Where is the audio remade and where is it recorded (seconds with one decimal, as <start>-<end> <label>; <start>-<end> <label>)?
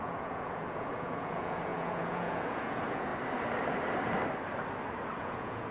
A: 0.0-3.1 remade; 3.1-5.2 recorded; 5.2-5.7 remade